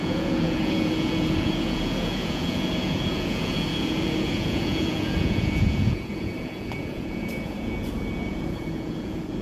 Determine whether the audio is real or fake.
fake